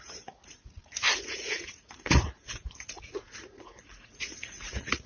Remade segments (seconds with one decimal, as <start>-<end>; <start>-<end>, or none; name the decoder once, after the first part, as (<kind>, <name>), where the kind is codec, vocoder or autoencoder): 0.0-5.1 (vocoder, Vocos)